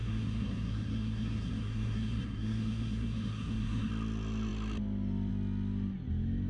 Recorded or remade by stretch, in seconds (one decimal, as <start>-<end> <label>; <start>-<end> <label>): 0.0-3.9 remade; 3.9-6.5 recorded